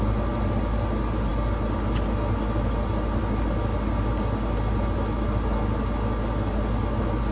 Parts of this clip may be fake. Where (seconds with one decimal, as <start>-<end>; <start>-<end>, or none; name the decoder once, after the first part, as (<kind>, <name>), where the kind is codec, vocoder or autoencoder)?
none

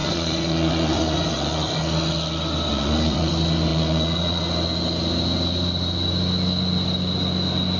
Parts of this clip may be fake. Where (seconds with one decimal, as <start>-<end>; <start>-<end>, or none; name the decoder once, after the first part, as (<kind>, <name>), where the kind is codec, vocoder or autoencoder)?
0.0-1.8 (vocoder, Vocos); 2.7-3.3; 3.7-4.4

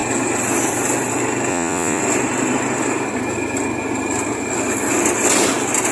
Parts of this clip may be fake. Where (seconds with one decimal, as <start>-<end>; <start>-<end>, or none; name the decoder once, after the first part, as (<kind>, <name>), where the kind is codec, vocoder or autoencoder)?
1.5-2.0 (vocoder, Vocos)

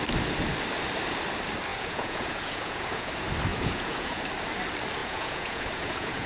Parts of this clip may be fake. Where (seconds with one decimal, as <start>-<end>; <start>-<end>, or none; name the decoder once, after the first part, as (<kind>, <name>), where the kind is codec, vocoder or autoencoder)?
1.7-3.1 (vocoder, Vocos); 3.5-4.2; 5.0-6.3

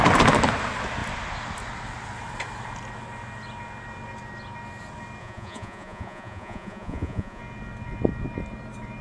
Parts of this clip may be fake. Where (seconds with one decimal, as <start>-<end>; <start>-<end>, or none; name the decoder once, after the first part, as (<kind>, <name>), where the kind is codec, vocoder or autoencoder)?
5.2-7.4 (vocoder, Vocos)

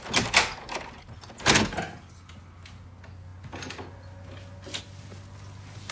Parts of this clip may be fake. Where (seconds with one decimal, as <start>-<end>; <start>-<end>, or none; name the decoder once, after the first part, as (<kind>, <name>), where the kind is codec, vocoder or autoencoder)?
none

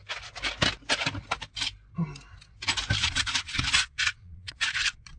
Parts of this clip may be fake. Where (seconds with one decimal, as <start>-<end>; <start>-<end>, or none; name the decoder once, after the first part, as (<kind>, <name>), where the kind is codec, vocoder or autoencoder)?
3.0-5.2 (vocoder, Vocos)